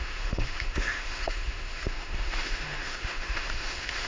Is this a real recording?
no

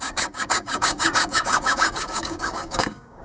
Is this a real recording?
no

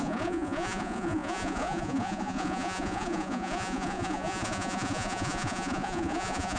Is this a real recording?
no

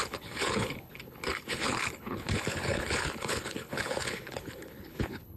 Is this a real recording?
no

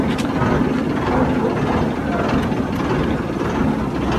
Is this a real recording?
yes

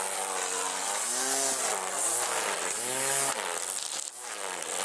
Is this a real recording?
yes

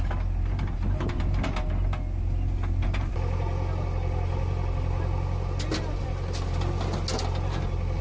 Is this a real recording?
yes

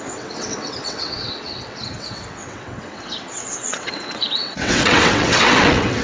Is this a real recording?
no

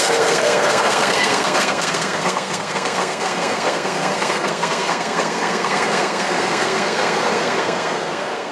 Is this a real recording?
no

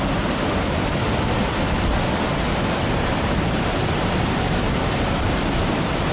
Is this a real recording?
yes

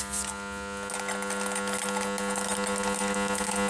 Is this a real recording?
yes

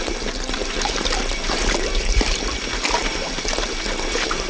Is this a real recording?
no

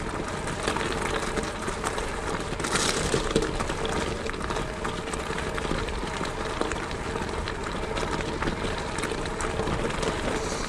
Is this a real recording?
yes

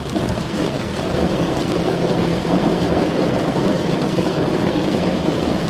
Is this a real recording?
no